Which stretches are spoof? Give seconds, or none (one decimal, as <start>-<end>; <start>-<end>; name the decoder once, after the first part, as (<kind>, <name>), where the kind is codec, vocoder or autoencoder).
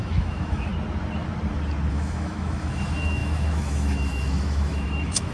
0.0-0.7 (autoencoder, DAC-VAE); 1.9-5.3